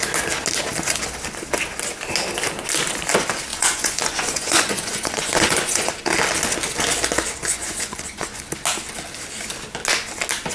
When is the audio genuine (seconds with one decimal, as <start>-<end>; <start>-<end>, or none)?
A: 0.0-3.5; 5.9-7.4; 8.4-10.5